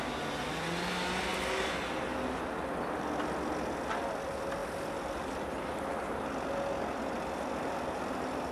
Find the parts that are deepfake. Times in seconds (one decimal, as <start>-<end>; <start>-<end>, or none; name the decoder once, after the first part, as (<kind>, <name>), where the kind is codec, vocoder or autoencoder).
none